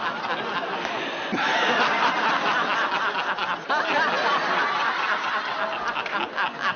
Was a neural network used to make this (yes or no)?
no